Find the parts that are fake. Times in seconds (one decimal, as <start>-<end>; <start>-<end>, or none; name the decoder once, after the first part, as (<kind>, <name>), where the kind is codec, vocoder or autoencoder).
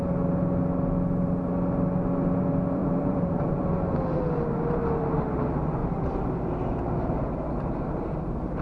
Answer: 2.8-3.5 (vocoder, BigVGAN v2); 5.8-8.6